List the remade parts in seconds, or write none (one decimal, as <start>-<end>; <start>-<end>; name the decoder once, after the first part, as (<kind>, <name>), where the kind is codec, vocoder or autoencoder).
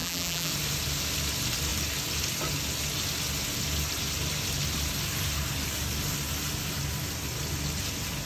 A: 0.0-0.5 (vocoder, BigVGAN v2)